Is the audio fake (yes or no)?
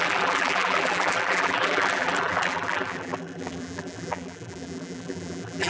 yes